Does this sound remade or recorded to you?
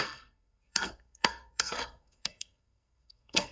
remade